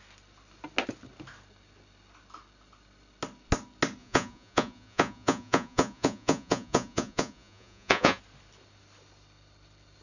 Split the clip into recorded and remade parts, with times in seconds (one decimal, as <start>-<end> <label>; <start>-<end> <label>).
0.0-4.0 recorded; 4.0-8.2 remade; 8.2-10.0 recorded